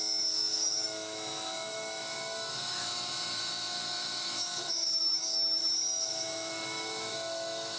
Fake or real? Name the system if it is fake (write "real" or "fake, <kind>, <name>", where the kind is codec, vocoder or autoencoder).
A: fake, autoencoder, DAC-VAE